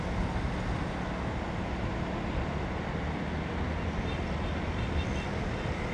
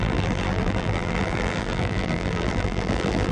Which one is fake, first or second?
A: second